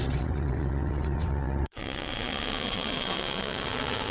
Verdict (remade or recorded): remade